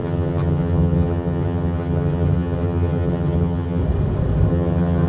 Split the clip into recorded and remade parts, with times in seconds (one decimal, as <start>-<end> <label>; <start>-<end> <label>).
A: 0.0-3.8 remade; 3.8-4.5 recorded; 4.5-5.1 remade